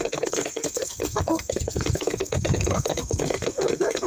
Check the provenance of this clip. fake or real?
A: fake